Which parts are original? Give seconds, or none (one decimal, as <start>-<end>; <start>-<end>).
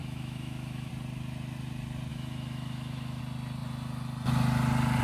0.9-2.1; 3.2-5.0